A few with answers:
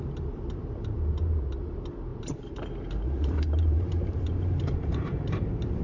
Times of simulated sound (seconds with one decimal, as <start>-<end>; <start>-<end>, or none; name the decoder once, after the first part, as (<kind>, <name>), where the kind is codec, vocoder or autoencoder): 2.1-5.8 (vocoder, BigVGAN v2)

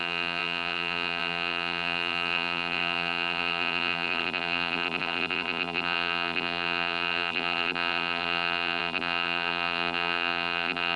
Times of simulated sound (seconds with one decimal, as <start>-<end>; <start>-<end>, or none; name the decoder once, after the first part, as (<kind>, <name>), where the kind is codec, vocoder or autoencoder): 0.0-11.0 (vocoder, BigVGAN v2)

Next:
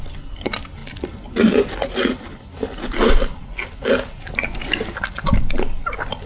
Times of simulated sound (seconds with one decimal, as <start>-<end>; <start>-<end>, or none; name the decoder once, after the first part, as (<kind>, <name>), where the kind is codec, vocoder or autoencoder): none

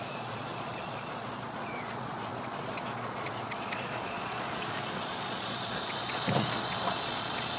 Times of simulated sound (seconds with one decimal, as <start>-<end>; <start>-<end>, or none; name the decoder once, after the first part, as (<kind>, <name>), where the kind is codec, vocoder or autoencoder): 0.0-7.6 (vocoder, Vocos)

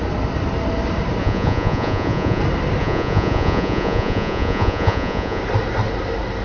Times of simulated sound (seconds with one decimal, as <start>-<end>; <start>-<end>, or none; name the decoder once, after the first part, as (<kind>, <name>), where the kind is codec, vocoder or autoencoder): 1.2-2.4 (vocoder, Vocos); 2.8-5.4